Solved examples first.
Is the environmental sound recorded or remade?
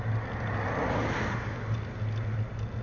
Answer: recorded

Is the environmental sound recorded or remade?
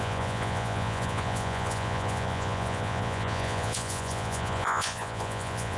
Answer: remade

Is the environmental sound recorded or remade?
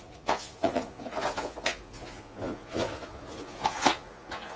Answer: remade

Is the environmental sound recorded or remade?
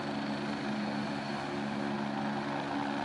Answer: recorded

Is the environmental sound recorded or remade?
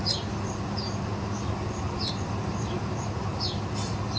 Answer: recorded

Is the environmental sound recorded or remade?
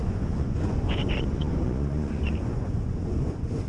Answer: remade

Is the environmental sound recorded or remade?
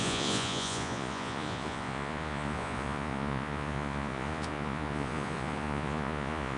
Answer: remade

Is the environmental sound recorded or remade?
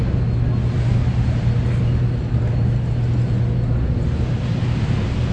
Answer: recorded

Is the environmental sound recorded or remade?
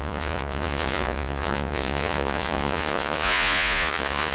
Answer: remade